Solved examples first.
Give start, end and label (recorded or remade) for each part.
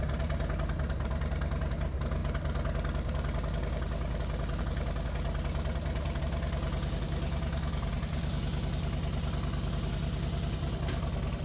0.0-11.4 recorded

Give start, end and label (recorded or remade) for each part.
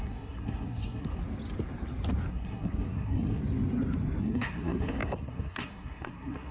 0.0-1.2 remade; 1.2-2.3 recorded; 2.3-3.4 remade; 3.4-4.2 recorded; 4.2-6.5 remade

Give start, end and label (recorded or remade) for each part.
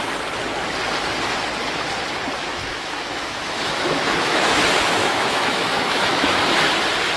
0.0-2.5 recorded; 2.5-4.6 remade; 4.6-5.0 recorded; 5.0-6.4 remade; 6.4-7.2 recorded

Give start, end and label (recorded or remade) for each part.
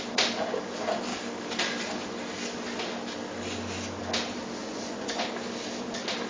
0.0-4.6 recorded; 4.6-5.3 remade; 5.3-6.3 recorded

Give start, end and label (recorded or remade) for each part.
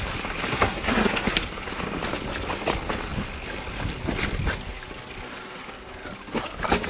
0.0-0.5 recorded; 0.5-1.4 remade; 1.4-6.9 recorded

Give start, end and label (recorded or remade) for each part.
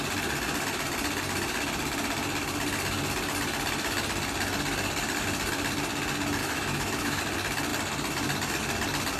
0.0-6.4 recorded; 6.4-7.2 remade; 7.2-9.2 recorded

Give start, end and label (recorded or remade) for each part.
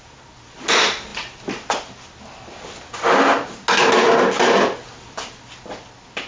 0.0-6.3 recorded